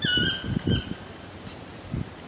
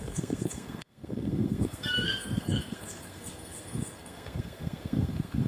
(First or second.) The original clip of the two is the first